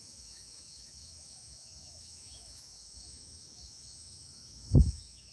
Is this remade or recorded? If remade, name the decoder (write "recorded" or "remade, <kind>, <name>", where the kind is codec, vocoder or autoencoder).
remade, autoencoder, DAC-VAE